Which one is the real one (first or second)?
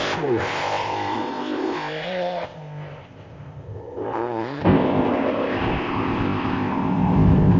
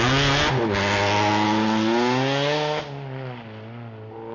second